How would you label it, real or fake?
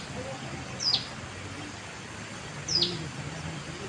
real